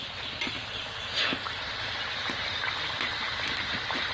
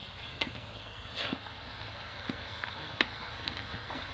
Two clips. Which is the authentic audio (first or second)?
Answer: first